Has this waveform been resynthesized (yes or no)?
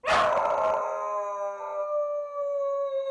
no